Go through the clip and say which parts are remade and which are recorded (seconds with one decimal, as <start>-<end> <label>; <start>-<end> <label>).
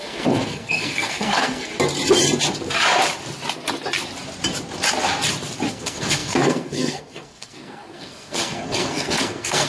0.0-1.7 remade; 1.7-5.7 recorded; 5.7-9.7 remade